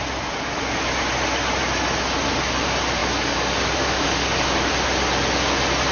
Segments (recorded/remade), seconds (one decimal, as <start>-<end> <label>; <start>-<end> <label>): 0.0-3.0 recorded; 3.0-4.7 remade; 4.7-5.9 recorded